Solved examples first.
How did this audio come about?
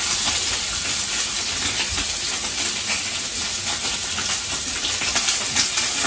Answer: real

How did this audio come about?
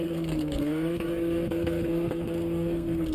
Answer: fake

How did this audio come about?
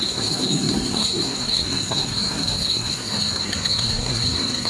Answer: fake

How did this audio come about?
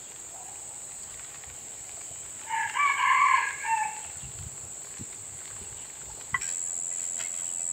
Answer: real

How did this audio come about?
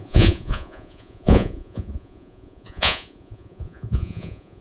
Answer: fake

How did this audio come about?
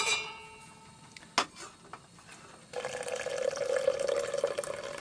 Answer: real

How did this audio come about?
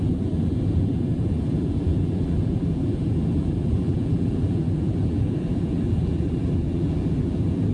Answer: fake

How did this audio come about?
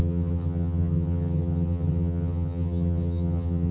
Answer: fake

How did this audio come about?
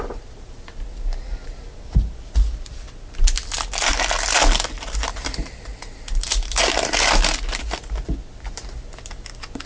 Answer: real